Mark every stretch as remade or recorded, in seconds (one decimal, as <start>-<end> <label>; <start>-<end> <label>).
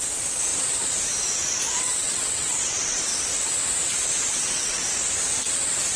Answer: 0.0-0.5 remade; 0.5-1.8 recorded; 1.8-3.1 remade; 3.1-4.3 recorded; 4.3-4.8 remade; 4.8-6.0 recorded